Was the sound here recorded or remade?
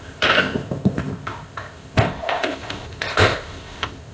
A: remade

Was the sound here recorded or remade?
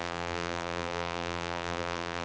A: remade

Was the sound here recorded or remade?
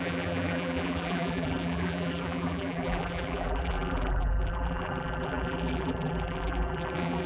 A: remade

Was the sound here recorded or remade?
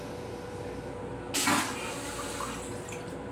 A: recorded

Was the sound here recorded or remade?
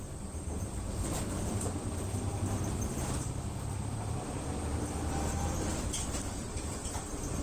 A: remade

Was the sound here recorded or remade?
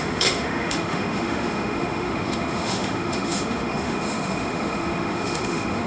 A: remade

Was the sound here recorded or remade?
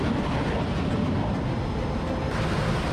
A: recorded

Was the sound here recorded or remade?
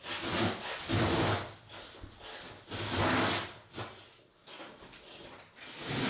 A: recorded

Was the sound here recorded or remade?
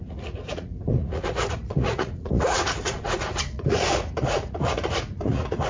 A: remade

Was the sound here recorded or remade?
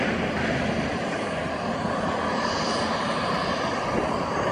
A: recorded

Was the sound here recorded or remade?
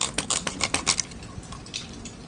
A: recorded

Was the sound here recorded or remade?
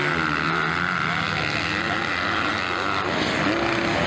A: recorded